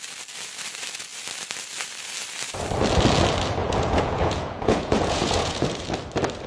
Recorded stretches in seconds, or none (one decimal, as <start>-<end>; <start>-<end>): 0.0-3.6; 5.8-6.5